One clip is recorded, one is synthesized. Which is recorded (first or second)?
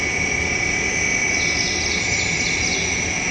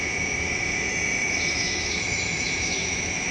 first